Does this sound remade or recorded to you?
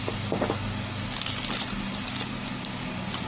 recorded